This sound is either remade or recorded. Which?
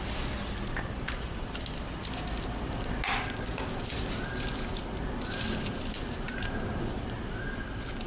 recorded